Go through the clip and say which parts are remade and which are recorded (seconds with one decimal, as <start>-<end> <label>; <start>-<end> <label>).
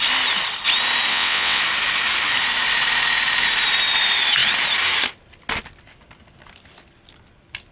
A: 0.0-1.1 recorded; 1.1-1.6 remade; 1.6-7.7 recorded